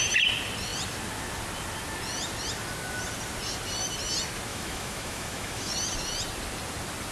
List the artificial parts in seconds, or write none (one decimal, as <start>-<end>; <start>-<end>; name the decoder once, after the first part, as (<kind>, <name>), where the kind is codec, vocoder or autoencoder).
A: 4.5-5.7 (autoencoder, DAC-VAE)